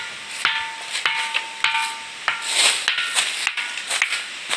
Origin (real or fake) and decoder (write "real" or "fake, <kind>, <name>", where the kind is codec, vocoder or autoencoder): real